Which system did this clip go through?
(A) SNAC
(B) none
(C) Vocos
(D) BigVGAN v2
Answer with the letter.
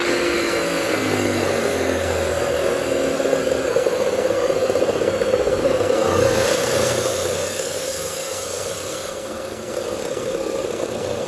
A